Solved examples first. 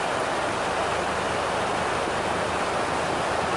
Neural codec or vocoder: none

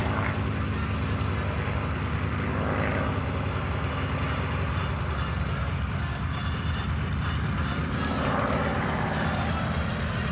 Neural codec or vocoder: none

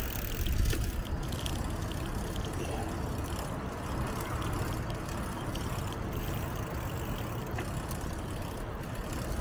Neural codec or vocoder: none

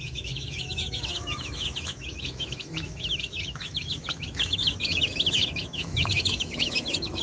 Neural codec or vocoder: autoencoder, DAC-VAE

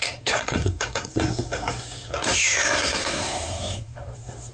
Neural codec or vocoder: codec, SNAC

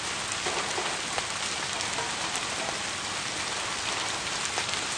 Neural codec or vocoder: none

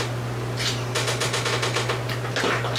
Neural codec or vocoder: none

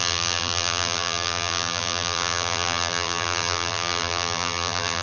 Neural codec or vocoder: vocoder, BigVGAN v2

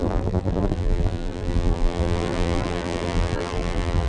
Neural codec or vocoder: vocoder, BigVGAN v2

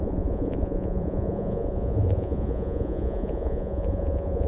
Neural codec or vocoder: vocoder, Vocos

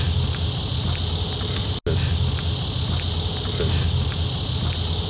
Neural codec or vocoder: none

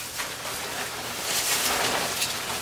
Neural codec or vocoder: none